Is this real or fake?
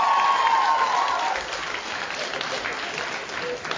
real